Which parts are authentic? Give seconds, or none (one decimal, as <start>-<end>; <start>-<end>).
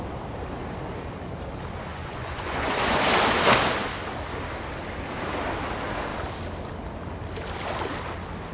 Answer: 0.0-1.9; 3.0-8.5